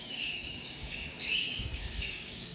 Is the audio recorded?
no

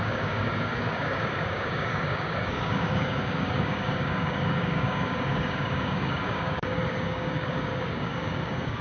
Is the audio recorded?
no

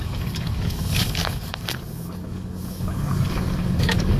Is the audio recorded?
no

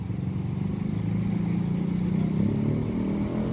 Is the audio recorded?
yes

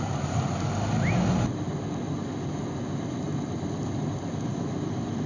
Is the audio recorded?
yes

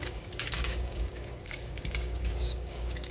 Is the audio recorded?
no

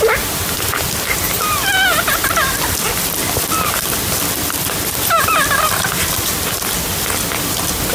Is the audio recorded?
yes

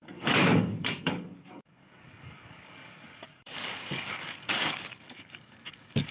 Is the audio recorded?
no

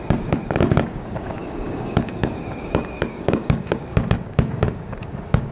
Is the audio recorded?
no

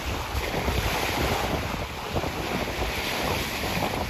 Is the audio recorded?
yes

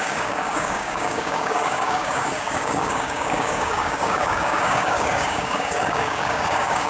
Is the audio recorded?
no